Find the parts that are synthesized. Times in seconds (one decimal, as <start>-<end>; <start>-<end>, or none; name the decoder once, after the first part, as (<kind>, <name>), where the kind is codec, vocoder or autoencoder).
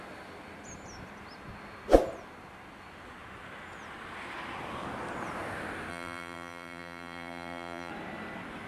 5.9-7.9 (vocoder, BigVGAN v2)